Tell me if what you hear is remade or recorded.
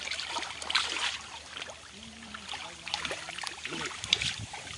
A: recorded